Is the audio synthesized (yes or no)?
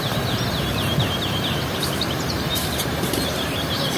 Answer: yes